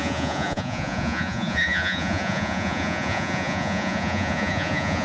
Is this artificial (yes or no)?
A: yes